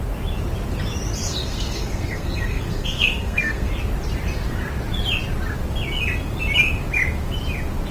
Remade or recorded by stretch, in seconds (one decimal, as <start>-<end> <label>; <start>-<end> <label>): 0.0-1.3 recorded; 1.3-3.7 remade; 3.7-7.9 recorded